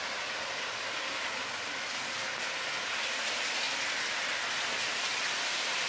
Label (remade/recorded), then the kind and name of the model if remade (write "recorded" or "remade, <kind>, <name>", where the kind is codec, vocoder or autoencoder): recorded